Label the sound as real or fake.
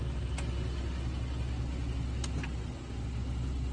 real